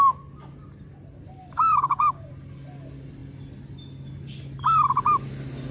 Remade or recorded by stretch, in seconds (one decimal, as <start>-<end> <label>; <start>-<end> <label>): 0.0-1.4 recorded; 1.4-2.3 remade; 2.3-5.7 recorded